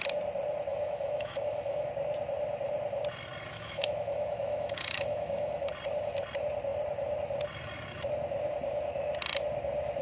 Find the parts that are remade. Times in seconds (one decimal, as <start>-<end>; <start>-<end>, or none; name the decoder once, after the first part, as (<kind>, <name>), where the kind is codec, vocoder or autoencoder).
0.7-1.9 (autoencoder, DAC-VAE); 3.5-5.7